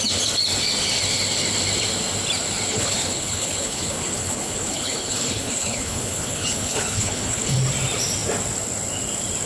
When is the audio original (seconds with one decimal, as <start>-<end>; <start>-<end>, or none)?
0.0-2.7; 7.6-9.5